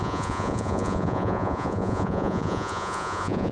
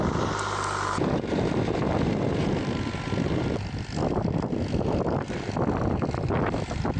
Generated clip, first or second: first